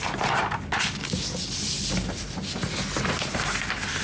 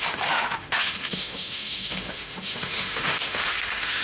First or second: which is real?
first